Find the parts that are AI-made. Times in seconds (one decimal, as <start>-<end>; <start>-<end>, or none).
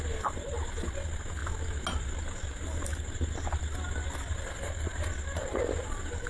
none